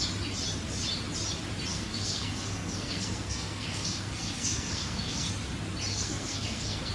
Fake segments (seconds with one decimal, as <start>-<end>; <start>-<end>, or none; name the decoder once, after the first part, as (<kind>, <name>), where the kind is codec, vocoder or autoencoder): 1.7-5.3 (codec, SNAC); 5.9-6.9